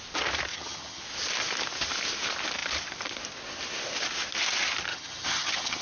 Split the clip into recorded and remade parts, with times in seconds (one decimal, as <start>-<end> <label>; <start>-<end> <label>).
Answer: 0.0-0.5 recorded; 0.5-1.0 remade; 1.0-4.9 recorded; 4.9-5.8 remade